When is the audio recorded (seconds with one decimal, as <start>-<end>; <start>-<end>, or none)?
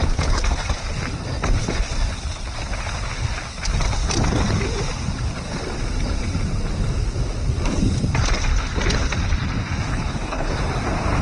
0.0-9.9; 10.6-11.2